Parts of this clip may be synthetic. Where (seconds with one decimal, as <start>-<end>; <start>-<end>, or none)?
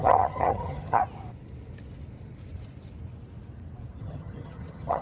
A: 0.0-1.0; 4.0-5.0